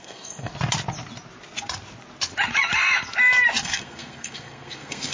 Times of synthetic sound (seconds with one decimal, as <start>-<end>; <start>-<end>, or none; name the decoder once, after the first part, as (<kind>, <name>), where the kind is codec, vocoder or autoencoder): 0.0-0.5 (codec, SNAC); 3.6-5.1